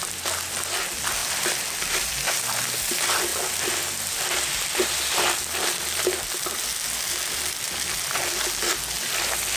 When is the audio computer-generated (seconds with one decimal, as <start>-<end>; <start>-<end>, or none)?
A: none